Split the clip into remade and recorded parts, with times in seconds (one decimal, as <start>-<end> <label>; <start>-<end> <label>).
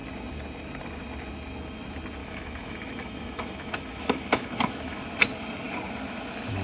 0.0-2.2 recorded; 2.2-5.0 remade; 5.0-6.6 recorded